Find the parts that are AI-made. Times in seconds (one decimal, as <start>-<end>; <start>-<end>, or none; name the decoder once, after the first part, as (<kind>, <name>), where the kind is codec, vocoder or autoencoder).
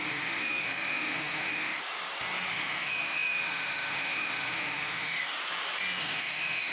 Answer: 0.0-1.8 (autoencoder, DAC-VAE); 2.5-5.4; 6.0-6.7